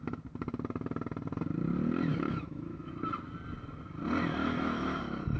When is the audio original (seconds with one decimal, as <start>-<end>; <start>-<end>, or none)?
0.0-2.1; 2.9-4.4; 5.0-5.4